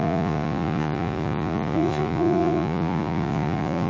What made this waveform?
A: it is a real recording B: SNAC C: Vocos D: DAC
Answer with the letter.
C